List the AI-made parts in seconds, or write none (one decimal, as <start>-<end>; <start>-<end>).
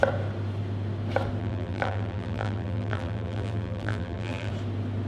1.4-4.5